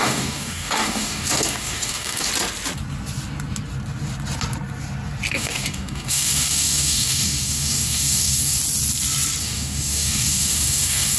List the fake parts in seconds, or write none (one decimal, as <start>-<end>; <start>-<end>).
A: 0.0-2.3; 5.3-8.6; 9.4-11.2